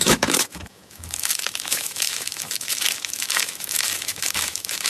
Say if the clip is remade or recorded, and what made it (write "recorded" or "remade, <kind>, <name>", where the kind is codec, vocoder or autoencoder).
remade, autoencoder, DAC-VAE